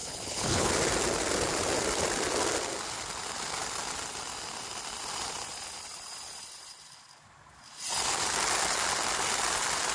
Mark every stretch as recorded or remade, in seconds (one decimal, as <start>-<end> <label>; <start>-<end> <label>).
0.0-0.7 remade; 0.7-9.9 recorded